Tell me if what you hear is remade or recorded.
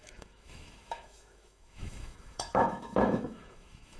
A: remade